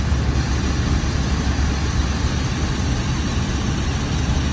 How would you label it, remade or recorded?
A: recorded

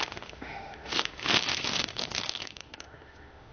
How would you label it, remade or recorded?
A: remade